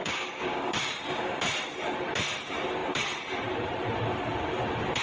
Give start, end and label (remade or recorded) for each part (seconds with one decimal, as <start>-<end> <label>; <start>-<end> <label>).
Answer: 0.0-1.4 remade; 1.4-5.0 recorded